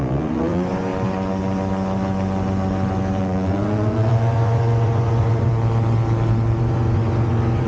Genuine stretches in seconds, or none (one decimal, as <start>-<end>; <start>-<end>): 0.9-3.2; 5.5-6.6

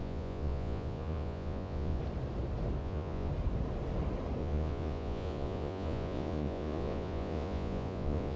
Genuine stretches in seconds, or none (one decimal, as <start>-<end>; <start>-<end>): 2.0-2.8; 3.3-4.4

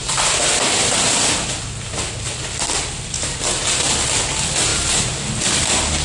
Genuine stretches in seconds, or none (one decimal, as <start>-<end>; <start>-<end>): 0.0-6.0

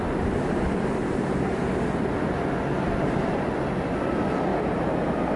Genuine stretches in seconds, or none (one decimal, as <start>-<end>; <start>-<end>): 0.0-1.0; 1.6-4.5; 5.0-5.4

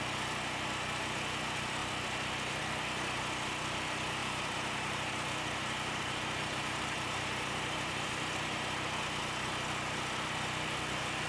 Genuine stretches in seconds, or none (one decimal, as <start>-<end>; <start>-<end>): 0.0-4.2; 9.2-11.3

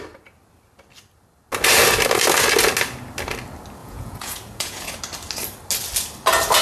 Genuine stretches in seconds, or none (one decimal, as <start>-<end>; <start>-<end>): 0.0-3.8; 5.0-6.6

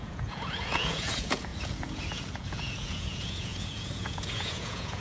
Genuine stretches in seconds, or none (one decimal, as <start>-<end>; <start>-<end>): none

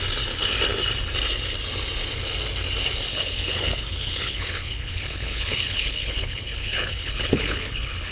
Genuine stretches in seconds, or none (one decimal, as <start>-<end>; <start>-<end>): 0.0-3.1